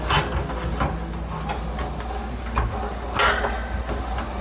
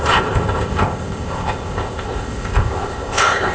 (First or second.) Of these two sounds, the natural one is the first